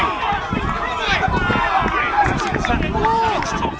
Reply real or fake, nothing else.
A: real